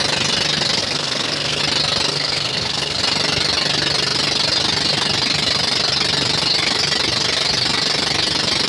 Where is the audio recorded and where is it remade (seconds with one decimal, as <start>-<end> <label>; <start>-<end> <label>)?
0.0-0.8 recorded; 0.8-1.6 remade; 1.6-2.1 recorded; 2.1-3.0 remade; 3.0-8.7 recorded